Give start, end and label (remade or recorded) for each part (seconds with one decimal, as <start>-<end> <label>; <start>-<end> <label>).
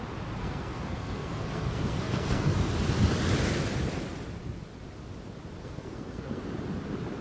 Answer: 0.0-0.4 recorded; 0.4-2.7 remade; 2.7-5.6 recorded; 5.6-6.4 remade; 6.4-7.2 recorded